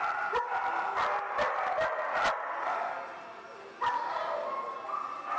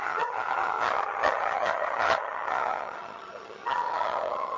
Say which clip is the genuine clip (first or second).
first